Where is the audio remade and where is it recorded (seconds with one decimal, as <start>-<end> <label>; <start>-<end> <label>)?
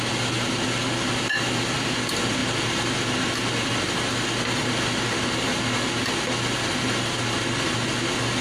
0.0-8.4 recorded